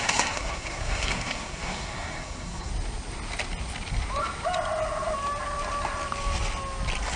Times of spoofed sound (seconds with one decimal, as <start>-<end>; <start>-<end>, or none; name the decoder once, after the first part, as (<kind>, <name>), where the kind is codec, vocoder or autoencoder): 0.0-2.7 (codec, SNAC)